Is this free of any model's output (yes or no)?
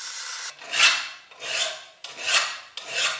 yes